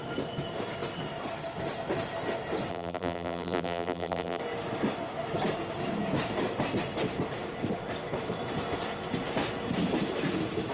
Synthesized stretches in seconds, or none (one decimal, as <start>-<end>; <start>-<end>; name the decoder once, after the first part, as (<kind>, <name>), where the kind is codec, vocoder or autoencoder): 2.7-4.4 (vocoder, BigVGAN v2)